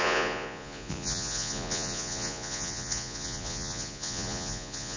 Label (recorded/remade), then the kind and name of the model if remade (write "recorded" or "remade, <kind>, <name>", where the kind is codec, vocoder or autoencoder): remade, vocoder, Vocos